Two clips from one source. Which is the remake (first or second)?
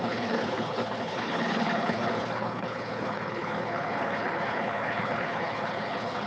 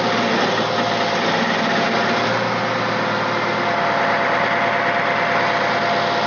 first